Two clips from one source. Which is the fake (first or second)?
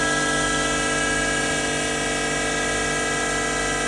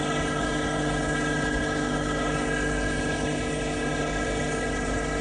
second